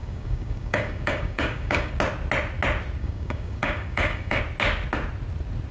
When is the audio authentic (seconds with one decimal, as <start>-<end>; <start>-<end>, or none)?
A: 2.0-3.0; 4.4-5.7